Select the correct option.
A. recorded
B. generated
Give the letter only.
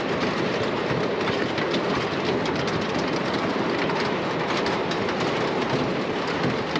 A